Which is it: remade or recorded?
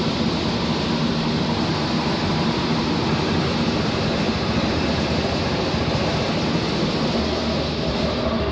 recorded